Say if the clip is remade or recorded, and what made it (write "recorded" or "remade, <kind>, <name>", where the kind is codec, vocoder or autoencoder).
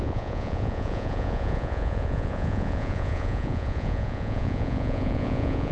remade, vocoder, Vocos